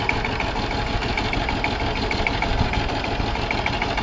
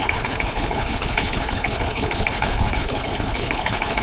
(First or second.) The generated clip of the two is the second